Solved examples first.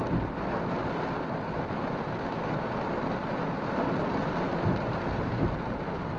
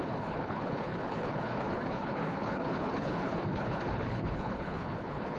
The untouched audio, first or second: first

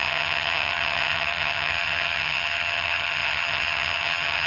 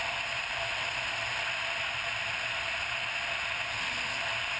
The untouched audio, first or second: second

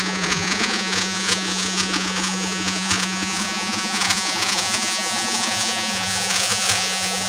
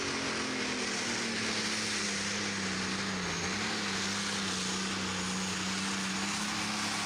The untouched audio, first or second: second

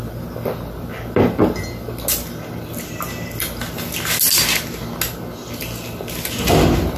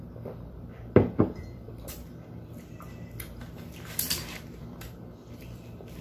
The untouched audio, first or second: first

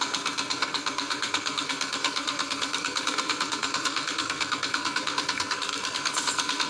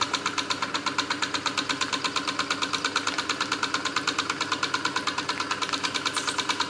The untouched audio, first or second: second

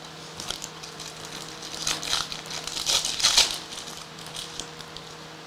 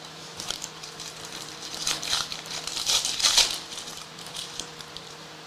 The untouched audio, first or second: first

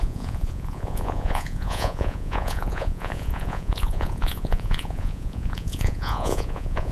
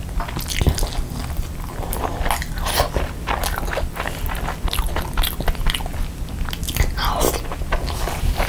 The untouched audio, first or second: second